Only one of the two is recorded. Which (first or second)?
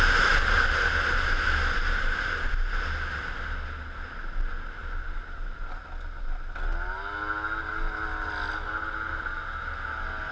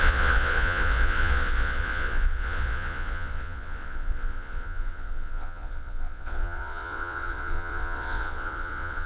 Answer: first